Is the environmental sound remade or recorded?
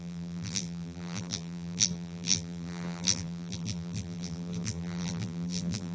remade